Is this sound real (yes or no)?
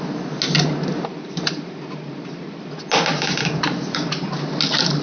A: yes